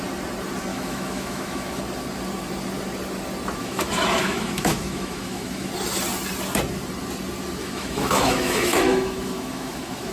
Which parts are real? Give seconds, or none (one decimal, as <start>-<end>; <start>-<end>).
0.0-0.7; 1.8-3.6; 5.7-7.6